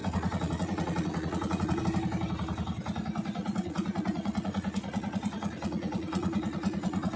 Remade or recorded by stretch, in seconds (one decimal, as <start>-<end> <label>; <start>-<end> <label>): 0.0-1.8 remade; 1.8-3.4 recorded; 3.4-7.2 remade